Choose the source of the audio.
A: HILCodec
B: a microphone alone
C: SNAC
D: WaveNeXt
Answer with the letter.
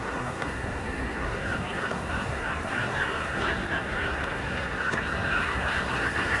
C